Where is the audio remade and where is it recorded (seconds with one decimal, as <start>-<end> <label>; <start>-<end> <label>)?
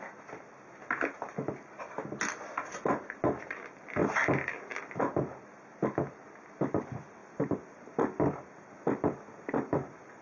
0.0-4.0 recorded; 4.0-5.0 remade; 5.0-7.2 recorded; 7.2-10.2 remade